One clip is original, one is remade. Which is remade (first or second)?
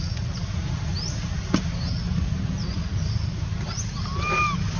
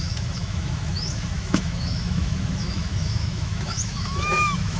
second